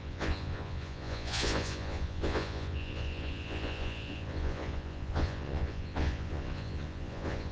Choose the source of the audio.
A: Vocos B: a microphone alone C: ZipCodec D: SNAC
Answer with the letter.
A